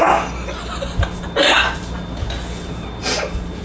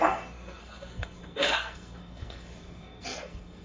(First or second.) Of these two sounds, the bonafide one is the first